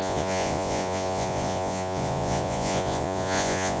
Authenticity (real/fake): fake